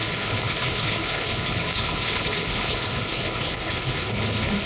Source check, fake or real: fake